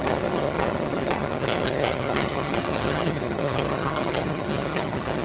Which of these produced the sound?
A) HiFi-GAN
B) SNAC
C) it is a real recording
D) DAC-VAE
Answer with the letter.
A